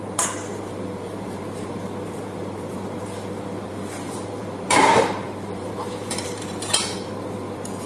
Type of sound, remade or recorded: remade